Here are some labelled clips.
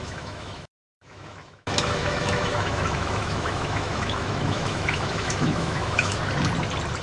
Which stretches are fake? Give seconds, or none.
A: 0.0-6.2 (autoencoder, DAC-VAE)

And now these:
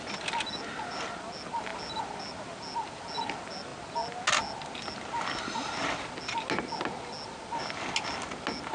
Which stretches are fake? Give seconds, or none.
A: none

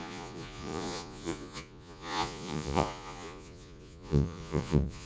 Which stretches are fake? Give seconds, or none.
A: 0.0-5.1 (vocoder, Vocos)

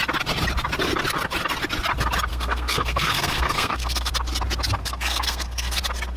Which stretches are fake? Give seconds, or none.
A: 2.3-4.1 (codec, SNAC); 4.8-5.8

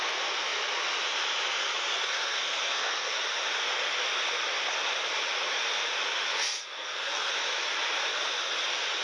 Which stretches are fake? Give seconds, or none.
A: 1.9-3.2 (codec, SNAC); 6.3-7.3

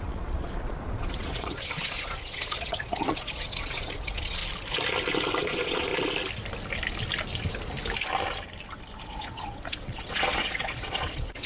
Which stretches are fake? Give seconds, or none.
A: 0.0-4.4 (vocoder, Vocos); 5.4-5.9; 9.0-11.5

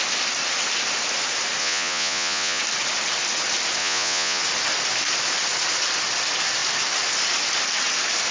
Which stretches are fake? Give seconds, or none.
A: 1.6-2.6 (vocoder, Vocos); 3.8-4.4

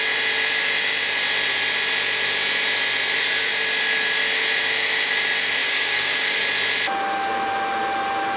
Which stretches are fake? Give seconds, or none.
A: 5.6-6.4 (codec, DAC)